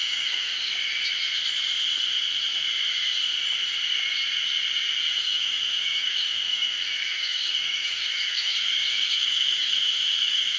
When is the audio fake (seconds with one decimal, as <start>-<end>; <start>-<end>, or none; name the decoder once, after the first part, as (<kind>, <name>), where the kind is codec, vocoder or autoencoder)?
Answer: 0.0-0.5 (autoencoder, DAC-VAE); 5.2-10.6